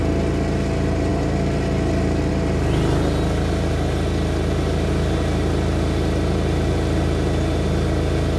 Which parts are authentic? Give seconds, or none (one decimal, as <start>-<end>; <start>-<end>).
0.0-8.4